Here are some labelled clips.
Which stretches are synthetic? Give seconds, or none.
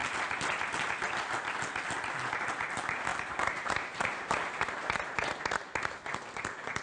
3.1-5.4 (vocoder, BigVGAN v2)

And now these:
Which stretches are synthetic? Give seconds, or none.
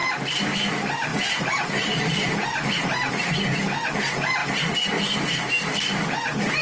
1.1-3.3 (vocoder, BigVGAN v2)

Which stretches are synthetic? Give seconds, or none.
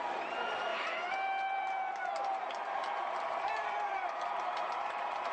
0.0-5.3 (vocoder, BigVGAN v2)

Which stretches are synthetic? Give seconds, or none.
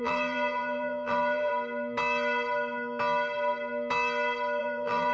0.0-1.5 (vocoder, BigVGAN v2); 4.6-5.1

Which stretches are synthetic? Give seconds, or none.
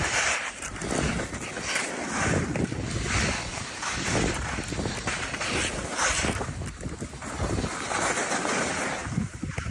3.5-4.1 (vocoder, BigVGAN v2)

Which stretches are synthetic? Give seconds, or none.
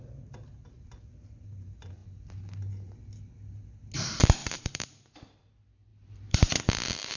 4.4-5.5 (vocoder, BigVGAN v2); 5.9-6.6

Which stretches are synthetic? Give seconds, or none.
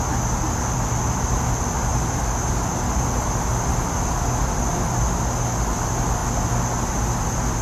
none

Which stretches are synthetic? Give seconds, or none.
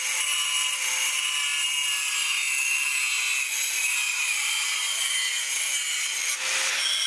none